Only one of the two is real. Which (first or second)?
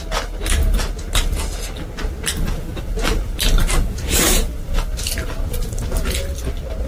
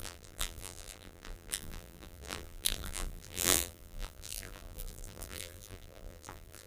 first